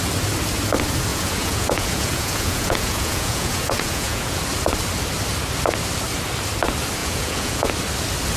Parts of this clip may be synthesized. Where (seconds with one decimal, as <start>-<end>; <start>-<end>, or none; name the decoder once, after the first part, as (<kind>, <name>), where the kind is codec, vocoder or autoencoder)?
1.1-4.4 (vocoder, Vocos); 7.0-7.7